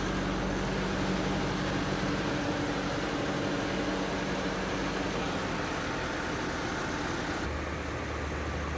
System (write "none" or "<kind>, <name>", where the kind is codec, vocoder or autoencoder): none